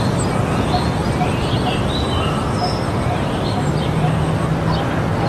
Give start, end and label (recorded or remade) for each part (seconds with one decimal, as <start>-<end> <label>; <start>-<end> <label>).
0.0-1.0 recorded; 1.0-4.2 remade; 4.2-5.3 recorded